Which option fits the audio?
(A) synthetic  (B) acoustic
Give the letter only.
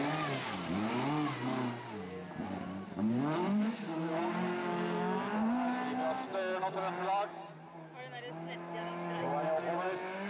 B